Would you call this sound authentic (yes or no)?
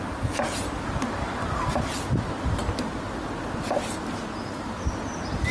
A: yes